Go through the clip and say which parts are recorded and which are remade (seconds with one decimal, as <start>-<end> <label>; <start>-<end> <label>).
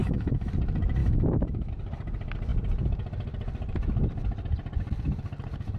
0.0-0.5 remade; 0.5-1.0 recorded; 1.0-1.7 remade; 1.7-5.8 recorded